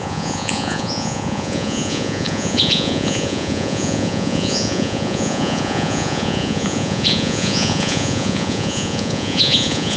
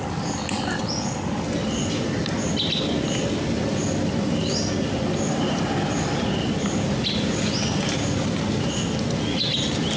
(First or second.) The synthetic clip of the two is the first